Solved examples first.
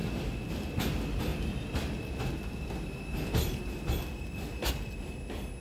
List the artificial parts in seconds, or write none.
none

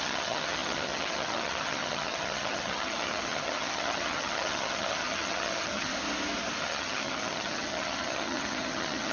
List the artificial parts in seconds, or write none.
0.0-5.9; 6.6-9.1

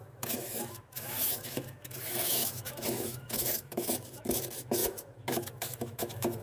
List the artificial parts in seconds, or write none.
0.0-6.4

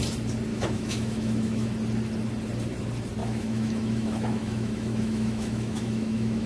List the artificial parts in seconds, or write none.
0.5-1.7; 3.2-6.5

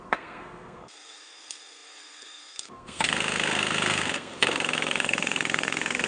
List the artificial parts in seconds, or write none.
0.0-6.1